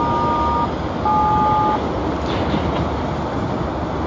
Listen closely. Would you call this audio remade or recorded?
recorded